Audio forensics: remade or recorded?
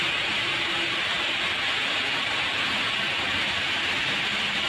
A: recorded